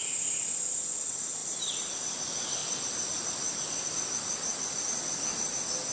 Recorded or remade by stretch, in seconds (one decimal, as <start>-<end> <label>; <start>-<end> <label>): 0.0-1.4 recorded; 1.4-1.9 remade; 1.9-2.6 recorded; 2.6-3.6 remade; 3.6-5.9 recorded